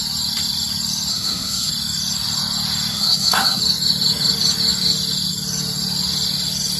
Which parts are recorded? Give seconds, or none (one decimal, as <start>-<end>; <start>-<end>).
0.0-1.1; 1.7-2.9; 3.6-6.8